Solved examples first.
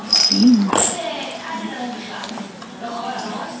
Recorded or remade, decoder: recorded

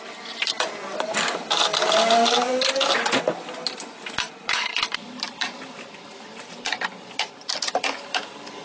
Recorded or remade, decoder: recorded